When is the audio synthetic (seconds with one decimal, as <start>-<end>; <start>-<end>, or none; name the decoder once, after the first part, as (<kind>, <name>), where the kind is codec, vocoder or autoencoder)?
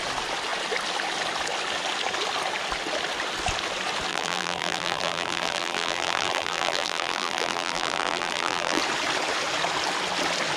4.1-8.8 (vocoder, BigVGAN v2)